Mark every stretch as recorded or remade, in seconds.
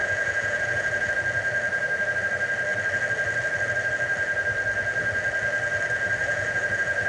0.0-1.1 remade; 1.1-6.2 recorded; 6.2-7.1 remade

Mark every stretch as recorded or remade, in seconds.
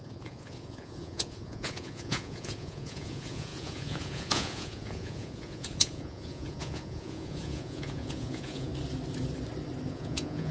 0.0-8.7 remade; 8.7-9.9 recorded; 9.9-10.5 remade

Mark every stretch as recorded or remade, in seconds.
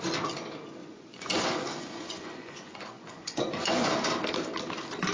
0.0-0.8 recorded; 0.8-3.9 remade; 3.9-5.1 recorded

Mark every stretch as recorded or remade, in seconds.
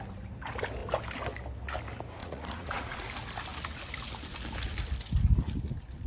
0.0-2.2 recorded; 2.2-3.0 remade; 3.0-6.1 recorded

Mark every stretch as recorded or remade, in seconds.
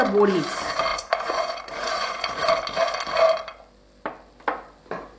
0.0-0.9 recorded; 0.9-2.5 remade; 2.5-5.2 recorded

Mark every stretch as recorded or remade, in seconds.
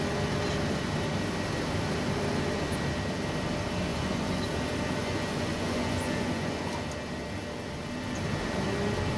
0.0-3.9 recorded; 3.9-4.4 remade; 4.4-5.0 recorded; 5.0-6.7 remade; 6.7-9.2 recorded